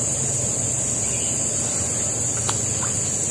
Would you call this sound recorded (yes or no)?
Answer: yes